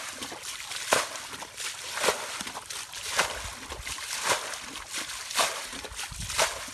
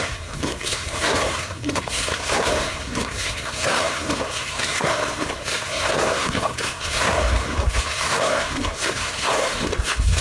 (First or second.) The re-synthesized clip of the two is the second